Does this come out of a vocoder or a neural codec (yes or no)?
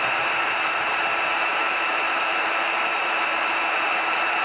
yes